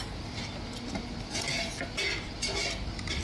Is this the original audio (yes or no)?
yes